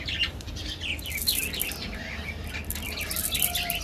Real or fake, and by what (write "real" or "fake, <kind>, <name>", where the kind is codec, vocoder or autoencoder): fake, vocoder, BigVGAN v2